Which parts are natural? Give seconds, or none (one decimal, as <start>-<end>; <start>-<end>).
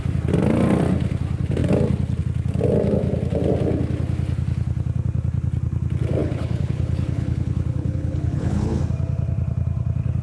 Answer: 0.0-6.2; 8.8-10.2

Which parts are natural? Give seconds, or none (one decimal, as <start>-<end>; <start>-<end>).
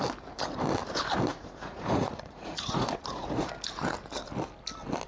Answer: 0.0-1.3; 3.5-5.1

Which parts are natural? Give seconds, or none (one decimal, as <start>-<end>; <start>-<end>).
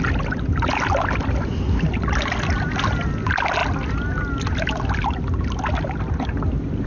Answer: 0.0-6.9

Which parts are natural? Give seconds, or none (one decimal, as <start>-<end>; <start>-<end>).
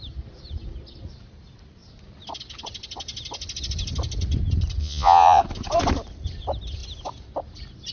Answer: 0.0-4.8; 5.4-7.9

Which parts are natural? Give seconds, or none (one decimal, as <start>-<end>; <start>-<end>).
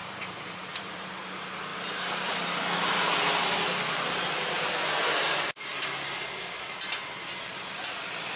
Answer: 1.1-8.4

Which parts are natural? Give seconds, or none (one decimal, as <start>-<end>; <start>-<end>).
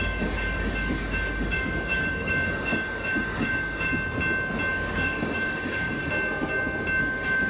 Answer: 3.9-4.7; 6.0-7.0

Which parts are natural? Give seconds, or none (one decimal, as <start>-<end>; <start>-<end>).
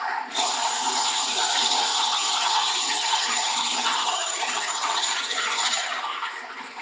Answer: 0.0-1.9; 6.0-6.8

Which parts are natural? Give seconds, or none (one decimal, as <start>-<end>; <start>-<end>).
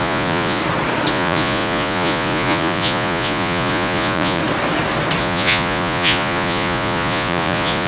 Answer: 0.6-1.1; 4.4-5.2